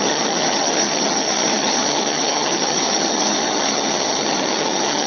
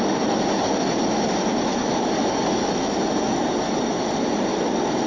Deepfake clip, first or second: first